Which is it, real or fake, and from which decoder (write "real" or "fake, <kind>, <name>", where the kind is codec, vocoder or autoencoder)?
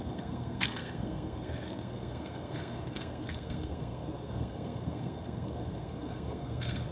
fake, codec, SNAC